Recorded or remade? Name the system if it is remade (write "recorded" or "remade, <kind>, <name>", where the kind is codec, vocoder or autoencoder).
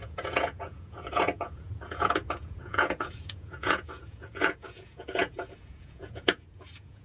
remade, vocoder, Vocos